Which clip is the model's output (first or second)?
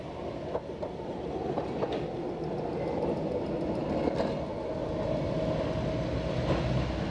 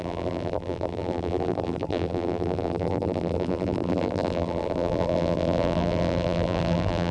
second